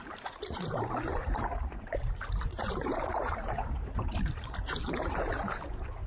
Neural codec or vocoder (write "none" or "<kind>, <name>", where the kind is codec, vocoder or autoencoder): vocoder, BigVGAN v2